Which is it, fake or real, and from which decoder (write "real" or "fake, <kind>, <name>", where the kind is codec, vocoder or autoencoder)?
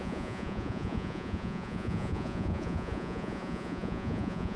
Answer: fake, vocoder, Vocos